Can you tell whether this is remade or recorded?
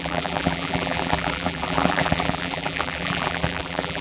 remade